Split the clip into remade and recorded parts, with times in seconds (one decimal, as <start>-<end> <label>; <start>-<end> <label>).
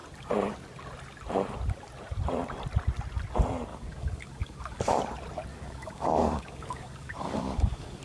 0.0-3.7 recorded; 3.7-5.0 remade; 5.0-5.5 recorded; 5.5-8.0 remade